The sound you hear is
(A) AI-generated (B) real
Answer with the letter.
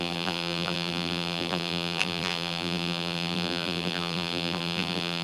A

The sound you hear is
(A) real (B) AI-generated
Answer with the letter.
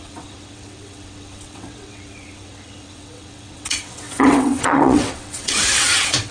B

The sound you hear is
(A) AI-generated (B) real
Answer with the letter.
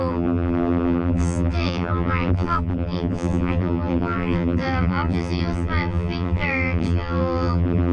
A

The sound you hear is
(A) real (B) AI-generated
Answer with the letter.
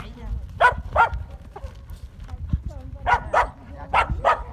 A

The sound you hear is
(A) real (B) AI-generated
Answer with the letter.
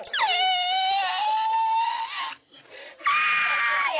A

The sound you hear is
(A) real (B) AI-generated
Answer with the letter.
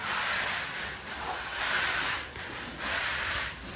B